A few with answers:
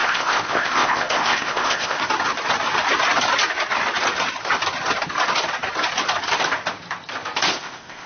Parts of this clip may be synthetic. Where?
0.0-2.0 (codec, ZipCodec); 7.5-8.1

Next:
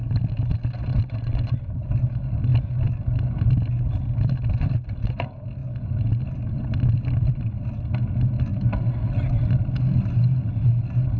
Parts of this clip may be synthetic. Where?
none